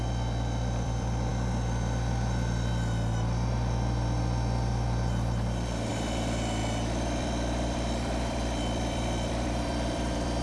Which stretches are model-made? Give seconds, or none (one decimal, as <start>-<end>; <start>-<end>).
0.0-1.3; 5.9-6.6; 7.2-10.4